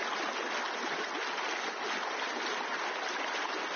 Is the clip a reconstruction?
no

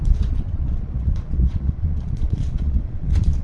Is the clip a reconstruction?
yes